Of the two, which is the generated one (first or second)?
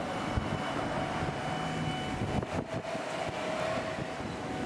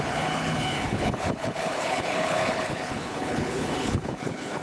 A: second